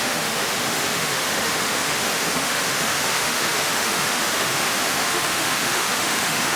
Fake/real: fake